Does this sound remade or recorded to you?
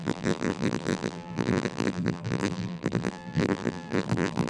remade